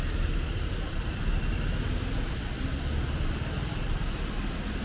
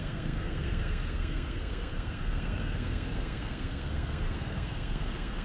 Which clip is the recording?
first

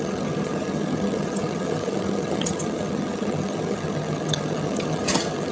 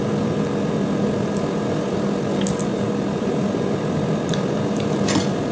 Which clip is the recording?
second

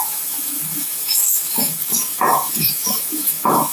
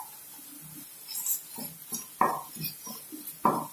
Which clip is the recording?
second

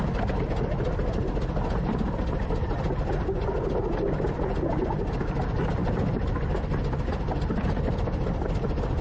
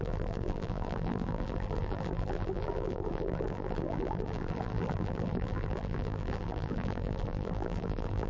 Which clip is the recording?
first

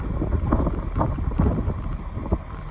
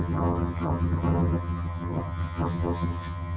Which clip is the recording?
first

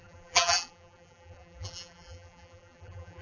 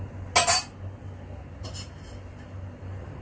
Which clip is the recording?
second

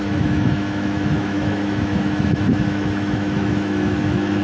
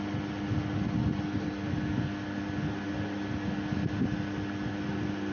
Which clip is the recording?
second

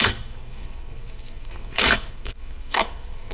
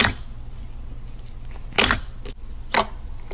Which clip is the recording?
second